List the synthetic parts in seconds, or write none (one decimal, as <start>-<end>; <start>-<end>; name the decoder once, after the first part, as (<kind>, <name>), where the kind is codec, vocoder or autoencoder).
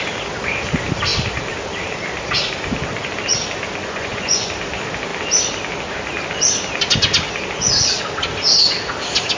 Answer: 3.8-4.5 (vocoder, Vocos)